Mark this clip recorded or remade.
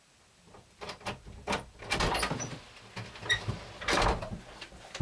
recorded